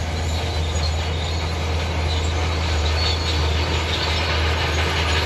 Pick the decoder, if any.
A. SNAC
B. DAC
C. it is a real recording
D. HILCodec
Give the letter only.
C